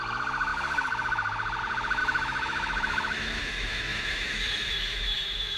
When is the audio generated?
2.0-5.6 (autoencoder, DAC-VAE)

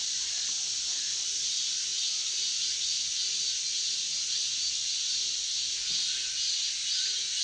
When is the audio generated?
none